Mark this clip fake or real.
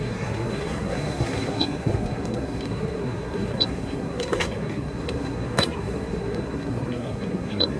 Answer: fake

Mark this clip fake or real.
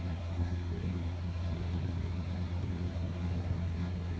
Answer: fake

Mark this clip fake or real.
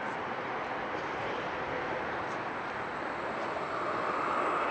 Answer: real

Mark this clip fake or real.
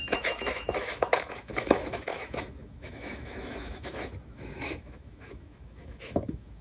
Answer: fake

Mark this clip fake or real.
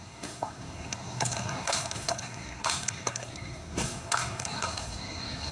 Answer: fake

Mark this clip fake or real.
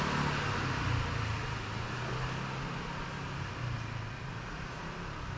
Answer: real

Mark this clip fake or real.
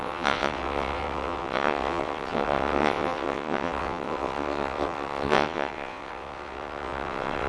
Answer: fake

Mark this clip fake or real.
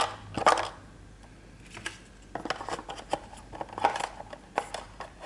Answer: real